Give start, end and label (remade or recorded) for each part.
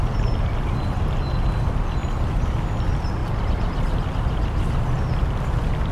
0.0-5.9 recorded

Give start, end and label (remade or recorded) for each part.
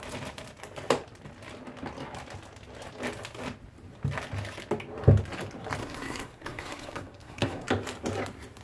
0.0-5.8 recorded; 5.8-7.7 remade; 7.7-8.6 recorded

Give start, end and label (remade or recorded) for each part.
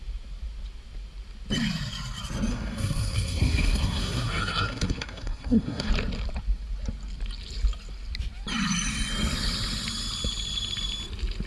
0.0-2.5 recorded; 2.5-5.9 remade; 5.9-11.5 recorded